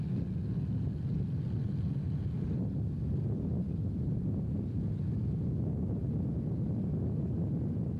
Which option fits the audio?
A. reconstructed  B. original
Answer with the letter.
B